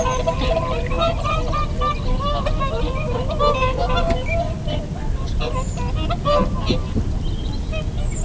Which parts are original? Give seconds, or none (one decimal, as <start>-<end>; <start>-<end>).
0.0-8.2